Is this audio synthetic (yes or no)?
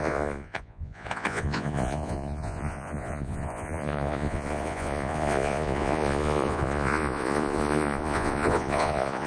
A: yes